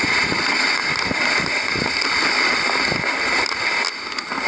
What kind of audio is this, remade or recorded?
recorded